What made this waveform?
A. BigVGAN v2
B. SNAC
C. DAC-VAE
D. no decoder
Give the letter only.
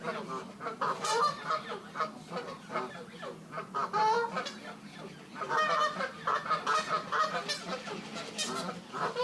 D